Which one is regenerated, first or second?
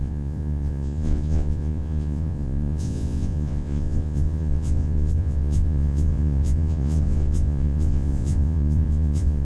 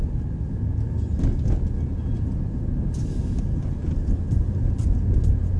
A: first